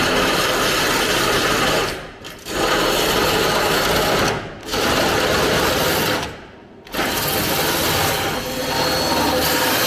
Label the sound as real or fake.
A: real